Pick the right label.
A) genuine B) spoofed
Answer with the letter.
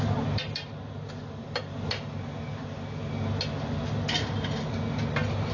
A